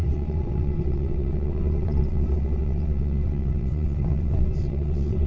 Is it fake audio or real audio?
fake